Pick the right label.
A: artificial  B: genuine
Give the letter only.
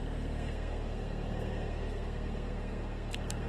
A